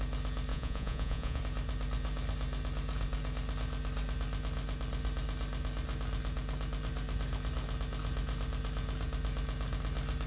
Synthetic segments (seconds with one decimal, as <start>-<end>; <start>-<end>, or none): 0.5-1.4